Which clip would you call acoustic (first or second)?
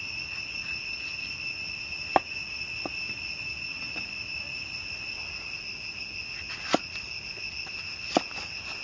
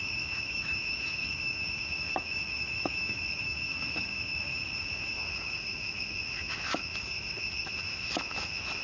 first